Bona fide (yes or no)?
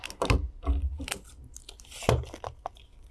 yes